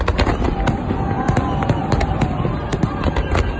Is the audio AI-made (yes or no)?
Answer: no